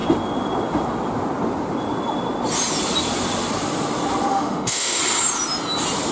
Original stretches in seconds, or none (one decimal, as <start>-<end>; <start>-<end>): 0.0-4.3; 5.0-6.1